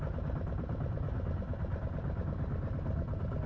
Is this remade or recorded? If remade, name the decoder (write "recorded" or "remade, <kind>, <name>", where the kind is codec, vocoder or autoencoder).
recorded